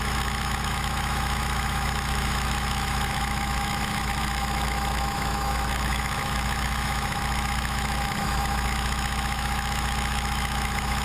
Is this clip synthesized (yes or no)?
yes